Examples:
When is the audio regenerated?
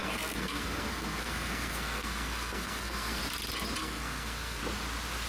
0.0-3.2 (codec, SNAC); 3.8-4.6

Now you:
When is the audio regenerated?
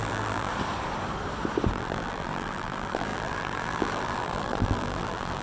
0.0-0.5 (vocoder, BigVGAN v2); 1.7-5.4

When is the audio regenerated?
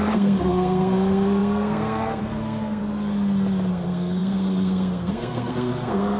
0.0-2.8 (codec, SNAC); 3.7-6.2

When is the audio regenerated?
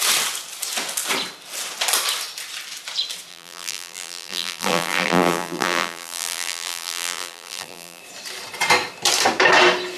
3.3-8.0 (vocoder, BigVGAN v2)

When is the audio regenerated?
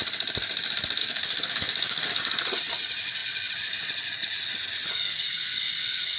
1.0-2.2 (codec, DAC); 5.1-6.2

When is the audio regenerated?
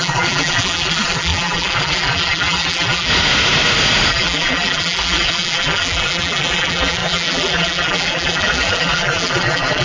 0.0-3.1 (vocoder, BigVGAN v2); 4.1-9.8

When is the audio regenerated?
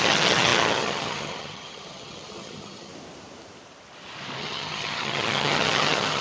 0.0-2.9 (vocoder, HiFi-GAN); 4.4-6.2